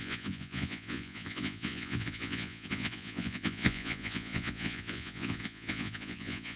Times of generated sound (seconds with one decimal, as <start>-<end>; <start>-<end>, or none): 0.0-6.6